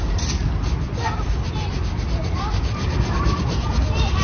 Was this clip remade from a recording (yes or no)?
yes